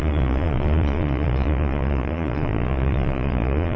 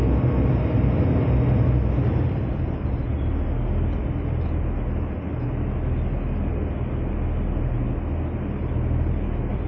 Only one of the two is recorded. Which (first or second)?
second